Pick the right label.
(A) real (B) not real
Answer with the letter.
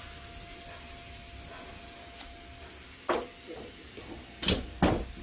A